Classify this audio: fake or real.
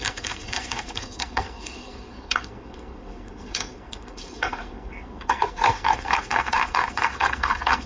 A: fake